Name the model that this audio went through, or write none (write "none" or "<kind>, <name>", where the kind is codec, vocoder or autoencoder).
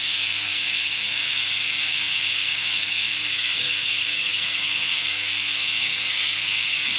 codec, SNAC